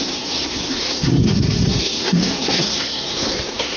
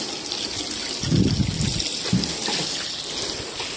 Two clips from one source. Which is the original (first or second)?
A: second